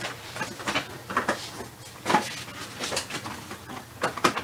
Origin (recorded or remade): recorded